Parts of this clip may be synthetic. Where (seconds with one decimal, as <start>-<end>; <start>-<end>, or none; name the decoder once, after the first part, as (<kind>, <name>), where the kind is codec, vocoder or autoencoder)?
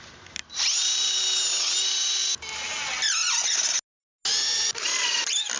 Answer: none